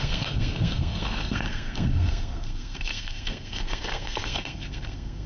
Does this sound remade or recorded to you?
remade